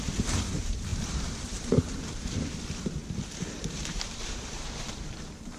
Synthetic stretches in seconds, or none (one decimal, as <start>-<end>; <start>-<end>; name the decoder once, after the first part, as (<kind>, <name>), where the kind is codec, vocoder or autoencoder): 0.0-3.0 (vocoder, BigVGAN v2); 3.5-5.6

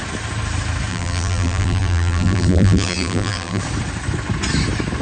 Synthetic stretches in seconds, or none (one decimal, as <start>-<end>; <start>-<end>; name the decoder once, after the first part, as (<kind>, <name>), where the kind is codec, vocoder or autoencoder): 0.9-3.6 (vocoder, BigVGAN v2)

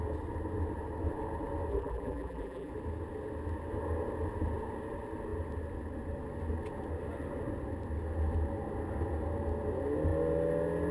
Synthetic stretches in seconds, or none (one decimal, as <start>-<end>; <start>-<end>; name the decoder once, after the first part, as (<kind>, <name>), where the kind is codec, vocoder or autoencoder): 1.7-2.7 (vocoder, BigVGAN v2)

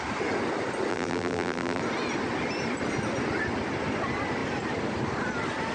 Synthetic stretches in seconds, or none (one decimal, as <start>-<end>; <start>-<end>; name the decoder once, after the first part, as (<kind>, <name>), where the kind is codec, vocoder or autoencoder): 0.9-1.8 (vocoder, BigVGAN v2)

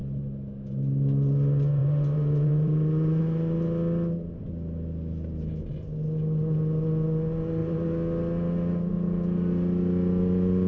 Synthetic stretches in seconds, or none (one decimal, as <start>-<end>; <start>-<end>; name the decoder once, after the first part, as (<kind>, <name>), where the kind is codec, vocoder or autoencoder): 1.8-3.2 (vocoder, BigVGAN v2)

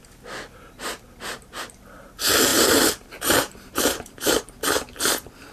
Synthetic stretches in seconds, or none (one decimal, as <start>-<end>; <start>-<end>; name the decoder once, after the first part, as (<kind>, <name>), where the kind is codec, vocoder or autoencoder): 2.5-4.4 (vocoder, BigVGAN v2)